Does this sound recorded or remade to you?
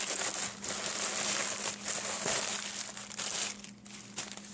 recorded